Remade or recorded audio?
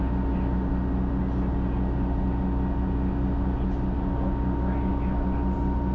recorded